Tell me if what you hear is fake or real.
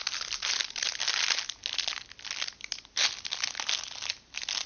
real